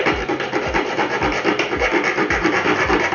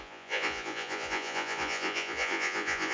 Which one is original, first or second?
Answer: first